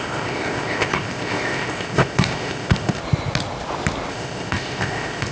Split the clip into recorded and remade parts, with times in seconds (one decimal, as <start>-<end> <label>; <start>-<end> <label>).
0.0-3.0 remade; 3.0-4.1 recorded; 4.1-5.3 remade